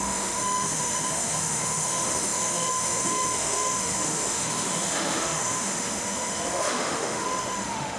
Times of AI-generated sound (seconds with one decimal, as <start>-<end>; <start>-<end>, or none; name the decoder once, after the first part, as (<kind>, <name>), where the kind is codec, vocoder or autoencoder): 0.0-8.0 (autoencoder, DAC-VAE)